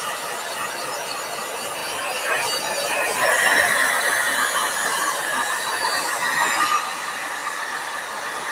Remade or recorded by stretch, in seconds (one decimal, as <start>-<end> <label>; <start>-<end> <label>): 0.0-1.8 recorded; 1.8-5.2 remade; 5.2-7.4 recorded; 7.4-8.1 remade; 8.1-8.5 recorded